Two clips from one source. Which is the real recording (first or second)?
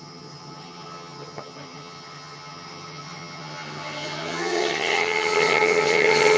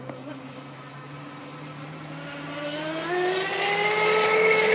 second